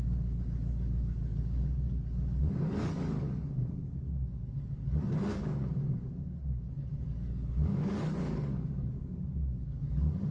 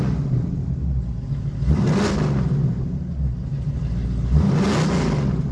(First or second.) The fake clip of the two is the first